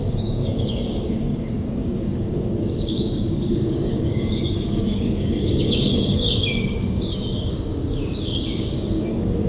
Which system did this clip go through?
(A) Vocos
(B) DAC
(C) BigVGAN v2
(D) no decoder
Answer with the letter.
B